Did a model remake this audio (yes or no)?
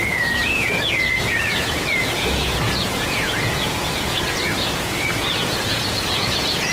yes